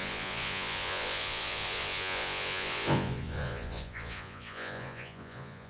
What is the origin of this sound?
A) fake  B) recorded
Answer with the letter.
A